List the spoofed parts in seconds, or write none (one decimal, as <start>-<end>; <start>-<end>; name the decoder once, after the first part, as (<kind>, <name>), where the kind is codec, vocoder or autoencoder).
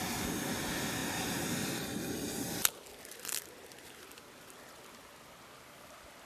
none